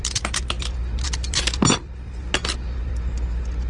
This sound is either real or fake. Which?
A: real